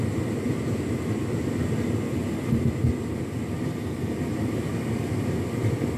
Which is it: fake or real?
real